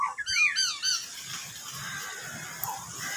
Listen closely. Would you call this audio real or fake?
real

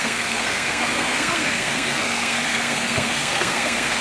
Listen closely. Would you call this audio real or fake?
fake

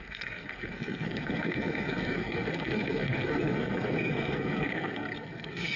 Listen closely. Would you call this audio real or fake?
fake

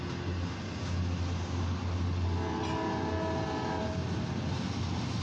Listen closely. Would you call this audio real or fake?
real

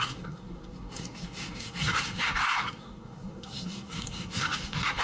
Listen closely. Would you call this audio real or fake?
fake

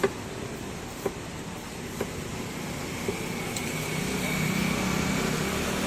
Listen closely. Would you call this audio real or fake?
real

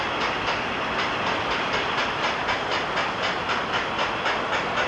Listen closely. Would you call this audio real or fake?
real